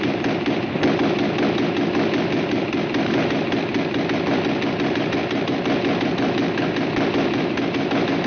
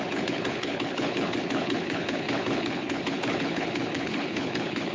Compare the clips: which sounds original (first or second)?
first